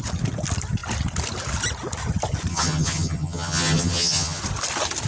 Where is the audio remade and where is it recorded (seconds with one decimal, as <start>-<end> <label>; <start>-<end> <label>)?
0.0-2.5 recorded; 2.5-4.4 remade; 4.4-5.1 recorded